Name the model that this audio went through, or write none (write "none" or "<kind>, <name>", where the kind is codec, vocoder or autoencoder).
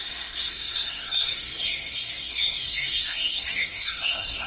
codec, SNAC